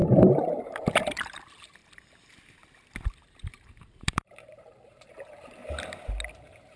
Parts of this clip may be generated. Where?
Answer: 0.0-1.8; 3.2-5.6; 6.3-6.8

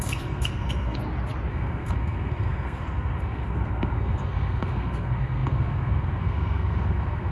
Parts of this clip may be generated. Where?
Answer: 0.0-1.0; 1.5-7.3

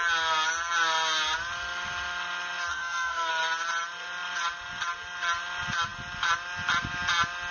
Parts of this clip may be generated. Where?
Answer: 2.7-3.3

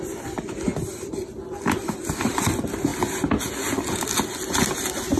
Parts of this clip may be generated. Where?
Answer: none

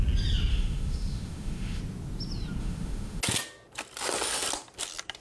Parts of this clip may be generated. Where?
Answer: 0.5-1.8; 2.6-3.2